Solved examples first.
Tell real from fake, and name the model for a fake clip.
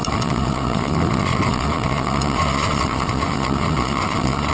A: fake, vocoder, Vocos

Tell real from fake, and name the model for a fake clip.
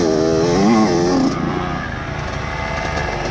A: real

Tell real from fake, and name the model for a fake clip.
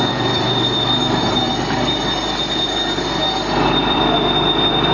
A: fake, vocoder, BigVGAN v2